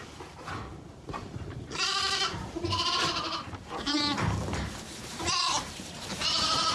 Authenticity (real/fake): fake